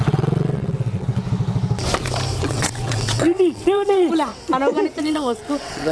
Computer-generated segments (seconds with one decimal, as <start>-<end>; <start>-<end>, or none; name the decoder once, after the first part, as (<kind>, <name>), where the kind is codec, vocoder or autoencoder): 0.0-1.2 (vocoder, WaveNeXt); 2.4-4.3; 5.0-5.9